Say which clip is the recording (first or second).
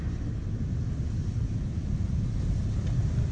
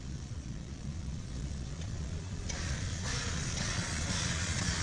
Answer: first